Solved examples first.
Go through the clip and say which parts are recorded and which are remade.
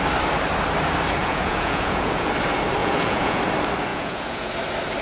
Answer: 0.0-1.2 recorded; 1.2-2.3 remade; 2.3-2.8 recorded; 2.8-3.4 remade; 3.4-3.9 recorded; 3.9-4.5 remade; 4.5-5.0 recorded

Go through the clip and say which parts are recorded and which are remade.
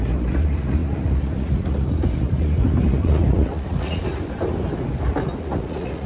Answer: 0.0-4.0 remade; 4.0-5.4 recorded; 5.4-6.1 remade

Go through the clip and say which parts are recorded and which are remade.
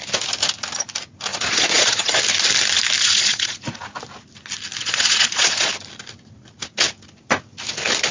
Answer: 0.0-1.3 recorded; 1.3-2.2 remade; 2.2-3.0 recorded; 3.0-3.8 remade; 3.8-4.8 recorded; 4.8-5.7 remade; 5.7-8.1 recorded